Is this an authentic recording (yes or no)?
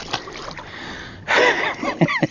yes